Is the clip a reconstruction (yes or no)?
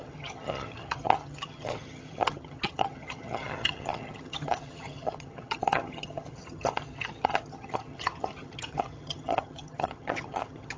yes